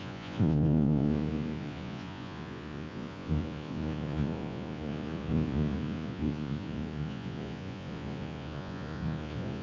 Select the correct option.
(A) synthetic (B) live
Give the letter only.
A